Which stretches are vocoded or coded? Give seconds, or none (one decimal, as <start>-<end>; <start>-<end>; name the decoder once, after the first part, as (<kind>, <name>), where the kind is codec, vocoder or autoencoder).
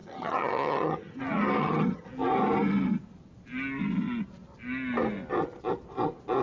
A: 0.0-1.2 (vocoder, HiFi-GAN); 1.6-2.1